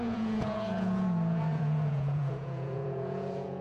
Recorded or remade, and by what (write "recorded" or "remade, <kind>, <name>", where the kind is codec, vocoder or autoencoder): remade, vocoder, Vocos